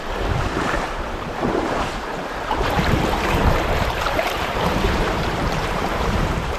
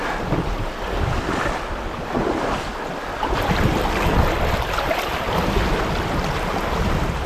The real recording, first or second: second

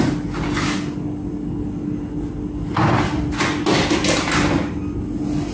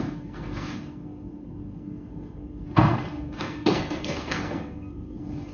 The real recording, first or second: first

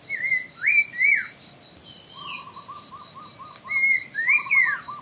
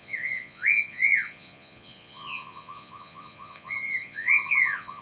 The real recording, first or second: first